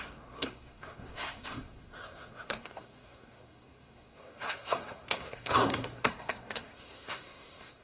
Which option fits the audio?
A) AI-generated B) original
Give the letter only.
A